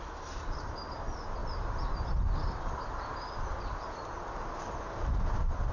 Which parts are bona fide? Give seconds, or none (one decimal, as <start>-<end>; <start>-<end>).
0.0-5.7